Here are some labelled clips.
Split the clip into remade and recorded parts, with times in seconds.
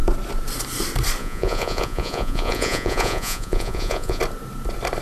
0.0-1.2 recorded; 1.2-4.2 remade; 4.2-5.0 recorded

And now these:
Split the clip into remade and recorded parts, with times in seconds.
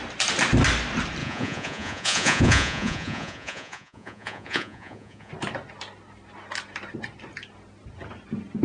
0.0-1.2 recorded; 1.2-5.3 remade; 5.3-8.6 recorded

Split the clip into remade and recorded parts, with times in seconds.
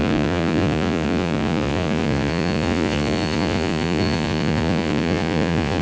0.0-5.8 remade